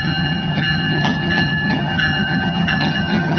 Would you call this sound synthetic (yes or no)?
yes